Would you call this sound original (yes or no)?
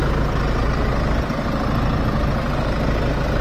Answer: yes